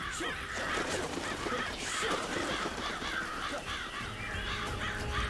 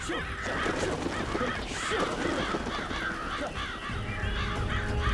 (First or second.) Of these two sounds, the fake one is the first